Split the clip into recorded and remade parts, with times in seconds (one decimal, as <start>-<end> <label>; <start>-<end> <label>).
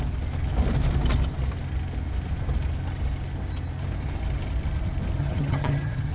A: 0.0-5.2 recorded; 5.2-6.1 remade